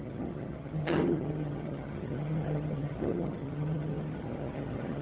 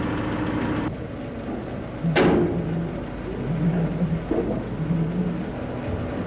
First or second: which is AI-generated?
first